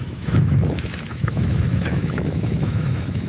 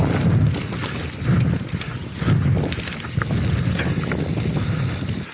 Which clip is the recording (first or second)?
second